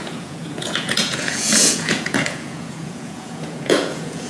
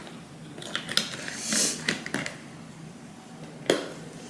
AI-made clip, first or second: first